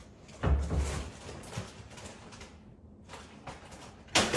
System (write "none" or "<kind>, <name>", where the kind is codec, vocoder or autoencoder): none